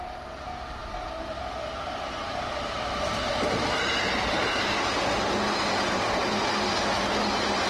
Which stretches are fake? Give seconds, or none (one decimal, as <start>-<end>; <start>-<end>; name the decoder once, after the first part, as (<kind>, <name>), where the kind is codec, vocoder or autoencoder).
none